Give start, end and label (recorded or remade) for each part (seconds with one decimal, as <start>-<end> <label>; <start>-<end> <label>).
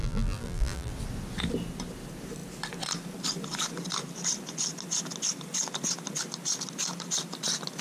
0.0-0.9 remade; 0.9-7.8 recorded